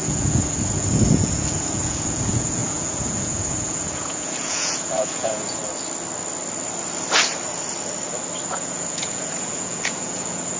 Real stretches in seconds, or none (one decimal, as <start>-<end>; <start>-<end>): 5.6-8.5